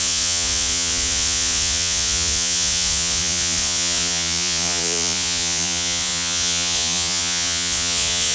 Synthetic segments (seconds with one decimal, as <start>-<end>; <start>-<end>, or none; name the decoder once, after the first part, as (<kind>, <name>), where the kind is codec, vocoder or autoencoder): 0.0-8.3 (vocoder, Vocos)